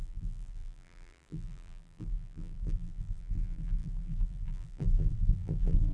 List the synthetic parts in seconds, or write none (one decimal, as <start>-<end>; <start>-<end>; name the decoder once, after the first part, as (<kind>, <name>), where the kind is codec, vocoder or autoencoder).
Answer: 0.0-5.9 (vocoder, BigVGAN v2)